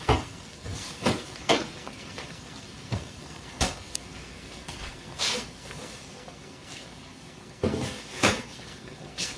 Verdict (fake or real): fake